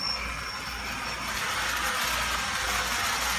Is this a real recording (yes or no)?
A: yes